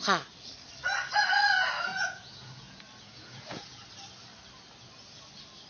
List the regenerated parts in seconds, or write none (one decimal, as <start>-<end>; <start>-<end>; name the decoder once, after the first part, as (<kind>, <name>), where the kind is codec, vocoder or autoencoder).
1.9-3.9 (vocoder, Vocos)